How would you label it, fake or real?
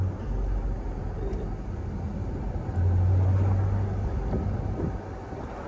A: real